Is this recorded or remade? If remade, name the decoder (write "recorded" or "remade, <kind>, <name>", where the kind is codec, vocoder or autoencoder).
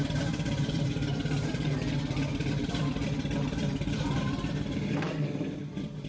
remade, vocoder, BigVGAN v2